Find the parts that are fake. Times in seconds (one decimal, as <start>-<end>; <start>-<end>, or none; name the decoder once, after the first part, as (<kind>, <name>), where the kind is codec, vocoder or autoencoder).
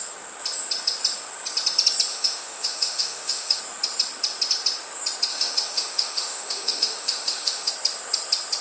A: 2.1-3.6 (autoencoder, DAC-VAE); 5.3-7.7